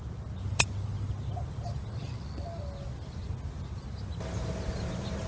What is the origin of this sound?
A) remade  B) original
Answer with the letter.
B